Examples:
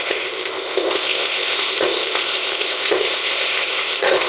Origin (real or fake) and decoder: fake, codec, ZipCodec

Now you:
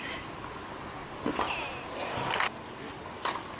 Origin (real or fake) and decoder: real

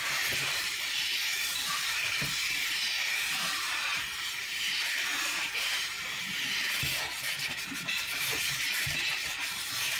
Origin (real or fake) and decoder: fake, vocoder, BigVGAN v2